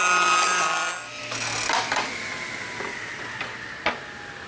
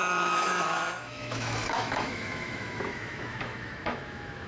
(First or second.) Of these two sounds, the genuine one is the first